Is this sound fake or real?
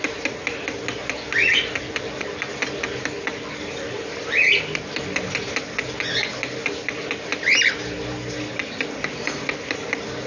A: real